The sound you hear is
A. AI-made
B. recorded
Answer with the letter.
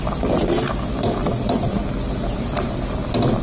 B